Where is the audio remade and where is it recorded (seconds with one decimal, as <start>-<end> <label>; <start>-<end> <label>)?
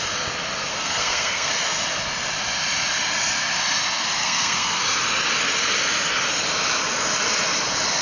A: 0.0-0.7 recorded; 0.7-1.5 remade; 1.5-4.2 recorded; 4.2-4.8 remade; 4.8-8.0 recorded